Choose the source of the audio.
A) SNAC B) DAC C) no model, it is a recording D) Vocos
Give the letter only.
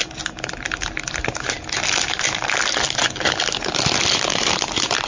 C